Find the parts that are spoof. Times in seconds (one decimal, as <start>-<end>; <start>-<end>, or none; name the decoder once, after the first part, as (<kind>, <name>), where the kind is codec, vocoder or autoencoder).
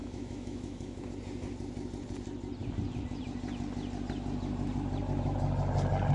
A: 0.0-1.1 (autoencoder, DAC-VAE)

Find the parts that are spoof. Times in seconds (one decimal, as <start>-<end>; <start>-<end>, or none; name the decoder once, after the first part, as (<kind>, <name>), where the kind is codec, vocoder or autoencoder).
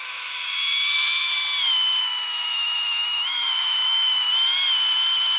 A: 0.0-1.3 (autoencoder, DAC-VAE); 2.0-4.3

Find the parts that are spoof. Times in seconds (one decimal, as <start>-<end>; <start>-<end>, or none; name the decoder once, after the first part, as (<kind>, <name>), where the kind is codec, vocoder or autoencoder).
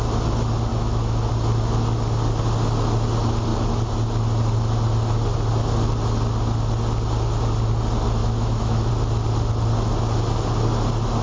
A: 0.7-1.3 (autoencoder, DAC-VAE); 8.2-8.9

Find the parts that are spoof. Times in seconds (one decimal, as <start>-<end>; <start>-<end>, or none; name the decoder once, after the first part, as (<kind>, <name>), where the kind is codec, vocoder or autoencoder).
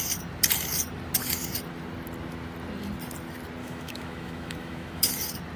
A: 3.6-5.1 (autoencoder, DAC-VAE)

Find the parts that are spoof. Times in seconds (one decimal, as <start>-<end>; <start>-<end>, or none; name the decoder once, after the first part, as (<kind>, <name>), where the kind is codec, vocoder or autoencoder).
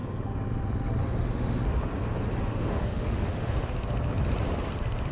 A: 1.0-1.6 (autoencoder, DAC-VAE); 2.5-3.7